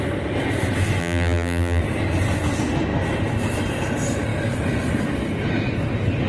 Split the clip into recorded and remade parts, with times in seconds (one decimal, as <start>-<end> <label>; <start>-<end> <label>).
0.0-1.0 recorded; 1.0-1.8 remade; 1.8-6.3 recorded